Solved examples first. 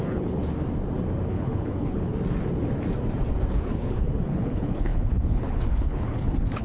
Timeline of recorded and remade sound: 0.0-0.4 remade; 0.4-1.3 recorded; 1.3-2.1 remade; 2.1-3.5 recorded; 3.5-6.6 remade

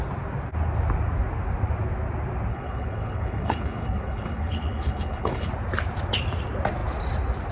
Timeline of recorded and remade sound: 0.0-2.5 recorded; 2.5-5.5 remade; 5.5-7.5 recorded

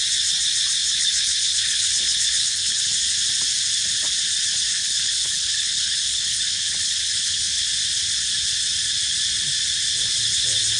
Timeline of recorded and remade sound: 0.0-0.8 recorded; 0.8-2.8 remade; 2.8-4.7 recorded; 4.7-7.6 remade; 7.6-10.8 recorded

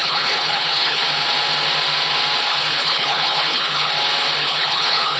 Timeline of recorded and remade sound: 0.0-1.0 remade; 1.0-2.5 recorded; 2.5-3.9 remade; 3.9-4.4 recorded; 4.4-5.2 remade

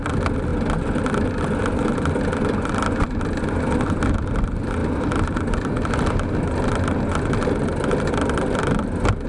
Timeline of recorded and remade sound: 0.0-9.3 recorded

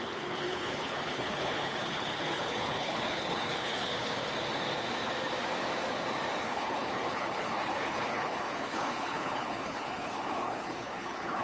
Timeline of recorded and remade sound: 0.0-4.2 remade; 4.2-6.4 recorded; 6.4-11.4 remade